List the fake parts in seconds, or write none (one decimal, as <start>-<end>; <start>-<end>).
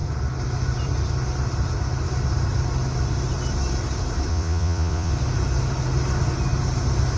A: 4.3-5.1